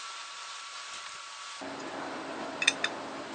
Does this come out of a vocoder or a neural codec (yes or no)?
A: no